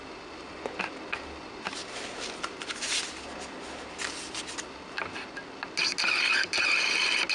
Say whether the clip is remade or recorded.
recorded